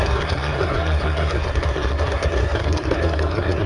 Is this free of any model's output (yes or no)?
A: no